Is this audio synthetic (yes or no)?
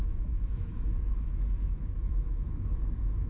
yes